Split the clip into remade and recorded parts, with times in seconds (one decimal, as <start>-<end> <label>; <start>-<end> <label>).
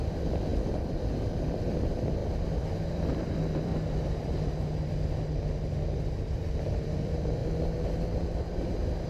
0.0-0.5 remade; 0.5-1.3 recorded; 1.3-2.2 remade; 2.2-2.9 recorded; 2.9-3.7 remade; 3.7-6.4 recorded; 6.4-7.4 remade; 7.4-9.1 recorded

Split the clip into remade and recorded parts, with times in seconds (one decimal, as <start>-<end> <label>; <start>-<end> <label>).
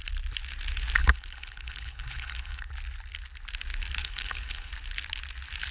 0.0-1.0 recorded; 1.0-2.7 remade; 2.7-4.0 recorded; 4.0-4.7 remade; 4.7-5.7 recorded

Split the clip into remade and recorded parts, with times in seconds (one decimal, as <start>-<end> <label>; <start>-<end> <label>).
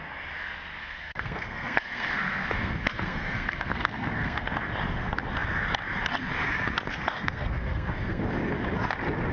0.0-0.8 recorded; 0.8-4.5 remade; 4.5-6.9 recorded; 6.9-8.2 remade; 8.2-9.3 recorded